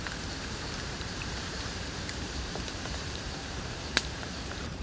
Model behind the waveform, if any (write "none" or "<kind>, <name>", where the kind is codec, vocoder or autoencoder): vocoder, BigVGAN v2